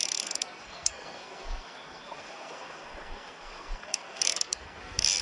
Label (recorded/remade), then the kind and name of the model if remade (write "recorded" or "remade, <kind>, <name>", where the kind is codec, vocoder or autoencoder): remade, codec, SNAC